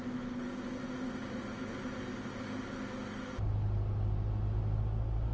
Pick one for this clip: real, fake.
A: real